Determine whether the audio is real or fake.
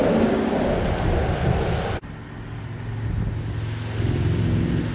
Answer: real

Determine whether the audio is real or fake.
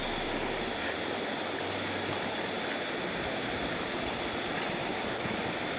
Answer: real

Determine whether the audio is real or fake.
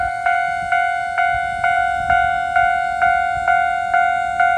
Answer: real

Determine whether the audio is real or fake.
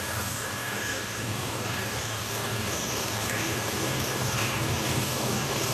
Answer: fake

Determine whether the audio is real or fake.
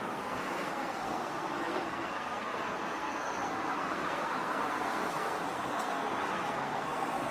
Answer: fake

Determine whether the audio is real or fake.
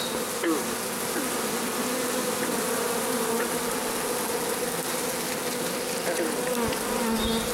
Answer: real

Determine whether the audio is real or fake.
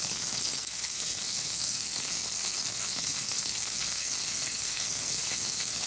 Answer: fake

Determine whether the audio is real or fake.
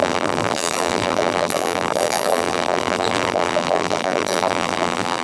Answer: fake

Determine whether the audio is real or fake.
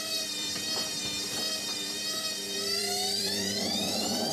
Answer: fake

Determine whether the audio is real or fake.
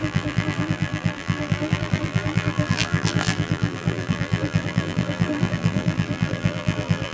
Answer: fake